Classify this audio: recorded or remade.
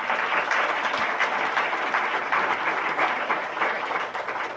recorded